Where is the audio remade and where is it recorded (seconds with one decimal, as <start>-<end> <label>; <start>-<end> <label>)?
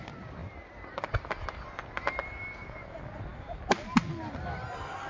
0.0-5.1 recorded